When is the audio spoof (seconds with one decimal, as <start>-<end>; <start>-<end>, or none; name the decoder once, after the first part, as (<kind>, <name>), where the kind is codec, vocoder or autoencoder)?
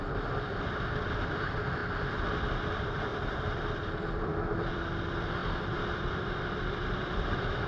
0.0-1.8 (vocoder, BigVGAN v2); 2.7-7.7